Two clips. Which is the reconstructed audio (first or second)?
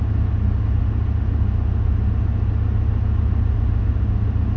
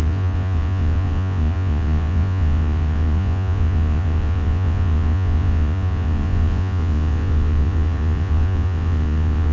second